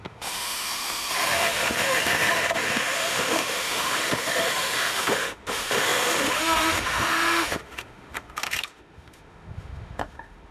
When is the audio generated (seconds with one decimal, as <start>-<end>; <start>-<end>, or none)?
0.0-10.5